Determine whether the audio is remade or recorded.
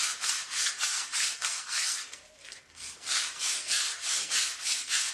remade